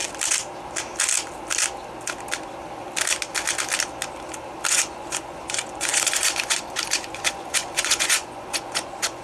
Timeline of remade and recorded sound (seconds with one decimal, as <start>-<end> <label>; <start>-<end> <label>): 0.0-4.7 recorded; 4.7-9.2 remade